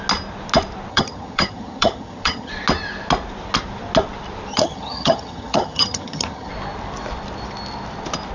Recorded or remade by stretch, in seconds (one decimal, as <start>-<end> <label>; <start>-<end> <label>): 0.0-0.9 recorded; 0.9-2.5 remade; 2.5-4.5 recorded; 4.5-6.5 remade; 6.5-8.3 recorded